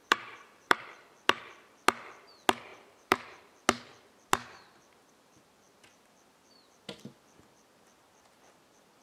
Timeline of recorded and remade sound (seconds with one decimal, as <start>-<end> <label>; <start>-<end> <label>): 0.0-0.9 remade; 0.9-2.7 recorded; 2.7-3.4 remade; 3.4-9.0 recorded